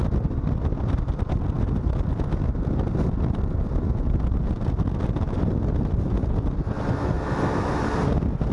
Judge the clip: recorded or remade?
recorded